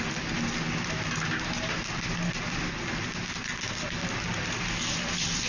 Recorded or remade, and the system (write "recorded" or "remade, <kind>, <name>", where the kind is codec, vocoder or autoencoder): recorded